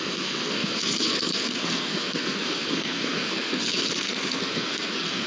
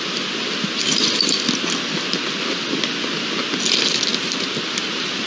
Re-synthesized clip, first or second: first